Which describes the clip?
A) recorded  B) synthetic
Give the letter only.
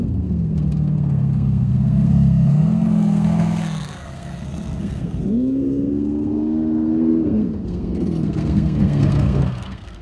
B